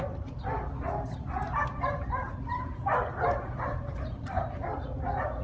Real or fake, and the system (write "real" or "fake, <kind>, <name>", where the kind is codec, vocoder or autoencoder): real